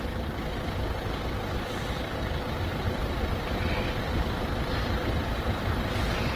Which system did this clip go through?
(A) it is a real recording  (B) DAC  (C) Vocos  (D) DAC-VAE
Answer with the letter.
A